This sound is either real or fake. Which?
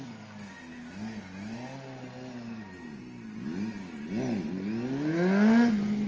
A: real